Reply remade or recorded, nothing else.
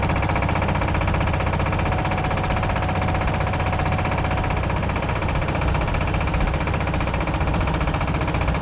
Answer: recorded